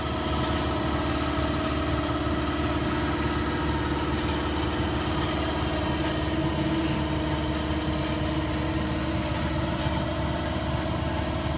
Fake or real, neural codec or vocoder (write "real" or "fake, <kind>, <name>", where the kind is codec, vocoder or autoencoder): real